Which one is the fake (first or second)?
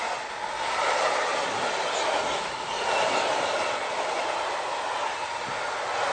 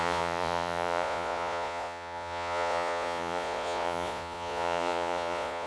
second